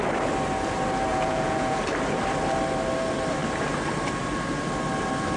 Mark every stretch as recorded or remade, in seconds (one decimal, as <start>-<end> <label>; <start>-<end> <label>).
0.0-1.1 recorded; 1.1-1.8 remade; 1.8-5.4 recorded